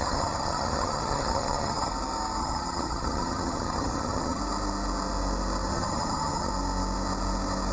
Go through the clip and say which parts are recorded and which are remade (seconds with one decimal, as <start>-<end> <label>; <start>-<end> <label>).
0.0-1.9 remade; 1.9-2.4 recorded; 2.4-4.4 remade; 4.4-5.7 recorded; 5.7-6.5 remade; 6.5-7.7 recorded

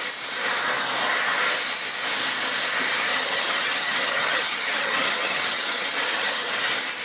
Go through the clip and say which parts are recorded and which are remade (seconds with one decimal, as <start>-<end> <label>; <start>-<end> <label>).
0.0-3.1 recorded; 3.1-6.5 remade; 6.5-7.0 recorded

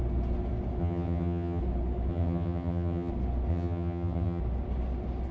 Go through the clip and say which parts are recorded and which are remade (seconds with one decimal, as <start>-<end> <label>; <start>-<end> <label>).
0.0-0.8 recorded; 0.8-1.6 remade; 1.6-2.1 recorded; 2.1-3.1 remade; 3.1-3.5 recorded; 3.5-4.4 remade; 4.4-5.3 recorded